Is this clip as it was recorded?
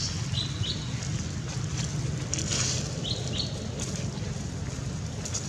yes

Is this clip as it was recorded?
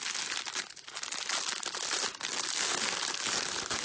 yes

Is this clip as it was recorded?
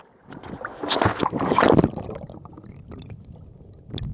yes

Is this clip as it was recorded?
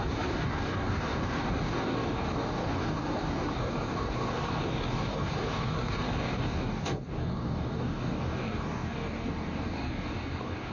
no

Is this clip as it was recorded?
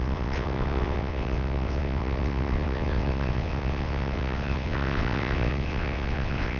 no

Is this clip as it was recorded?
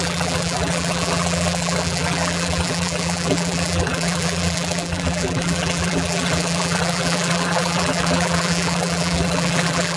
no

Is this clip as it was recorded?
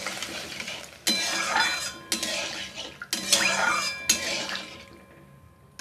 yes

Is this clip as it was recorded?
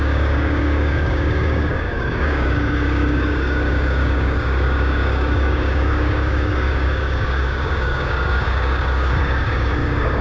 no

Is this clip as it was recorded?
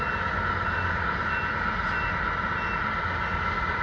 yes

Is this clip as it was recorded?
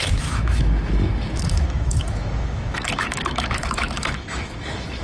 no